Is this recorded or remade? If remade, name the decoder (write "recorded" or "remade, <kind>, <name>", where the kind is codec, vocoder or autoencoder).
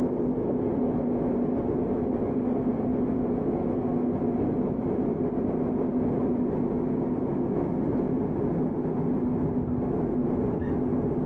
recorded